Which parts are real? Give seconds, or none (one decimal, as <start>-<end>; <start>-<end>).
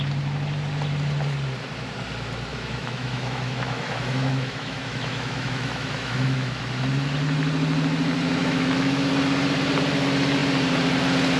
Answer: 0.0-2.5; 6.6-8.4; 9.1-11.4